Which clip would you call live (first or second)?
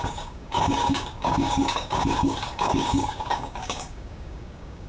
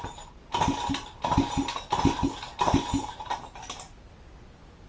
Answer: second